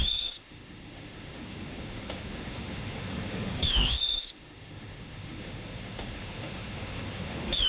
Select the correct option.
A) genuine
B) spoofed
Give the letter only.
B